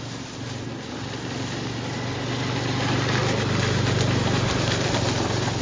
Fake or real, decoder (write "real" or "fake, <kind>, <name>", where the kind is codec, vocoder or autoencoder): real